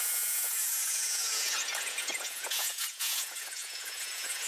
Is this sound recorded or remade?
remade